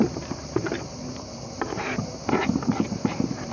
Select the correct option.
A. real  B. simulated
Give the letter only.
A